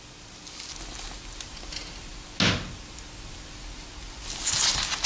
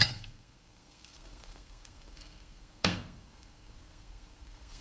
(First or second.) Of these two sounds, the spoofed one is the second